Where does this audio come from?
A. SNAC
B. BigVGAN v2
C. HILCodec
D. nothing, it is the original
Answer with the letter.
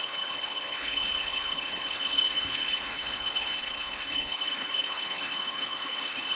C